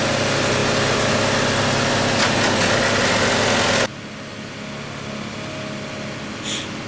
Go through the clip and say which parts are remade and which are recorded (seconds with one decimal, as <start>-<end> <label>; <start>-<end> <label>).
0.0-6.9 recorded

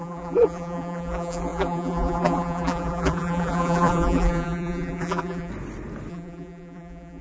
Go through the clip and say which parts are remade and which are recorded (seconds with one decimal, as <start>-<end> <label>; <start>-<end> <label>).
0.0-5.5 remade; 5.5-6.1 recorded; 6.1-7.2 remade

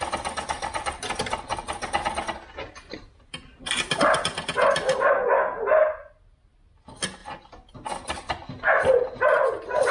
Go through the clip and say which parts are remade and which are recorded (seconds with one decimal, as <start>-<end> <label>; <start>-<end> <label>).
0.0-9.9 recorded

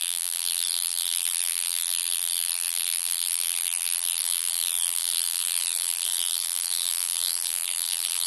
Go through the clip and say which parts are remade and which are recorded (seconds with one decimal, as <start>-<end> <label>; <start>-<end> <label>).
0.0-8.3 remade

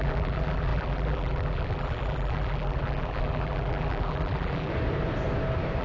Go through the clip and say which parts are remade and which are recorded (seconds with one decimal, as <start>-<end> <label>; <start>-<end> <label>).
0.0-4.7 remade; 4.7-5.8 recorded

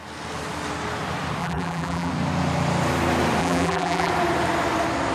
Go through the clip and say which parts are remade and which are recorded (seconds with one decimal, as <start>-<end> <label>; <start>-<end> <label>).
0.0-1.4 recorded; 1.4-2.1 remade; 2.1-3.4 recorded; 3.4-4.1 remade; 4.1-5.1 recorded

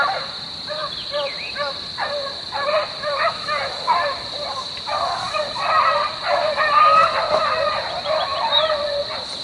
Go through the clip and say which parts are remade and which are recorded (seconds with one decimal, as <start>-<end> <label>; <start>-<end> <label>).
0.0-3.6 recorded; 3.6-7.4 remade; 7.4-8.3 recorded; 8.3-9.0 remade; 9.0-9.4 recorded

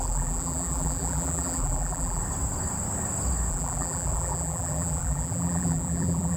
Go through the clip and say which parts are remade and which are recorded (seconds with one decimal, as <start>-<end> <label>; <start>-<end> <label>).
0.0-2.2 remade; 2.2-3.5 recorded; 3.5-6.4 remade